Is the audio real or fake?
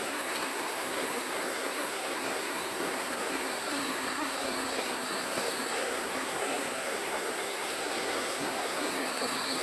fake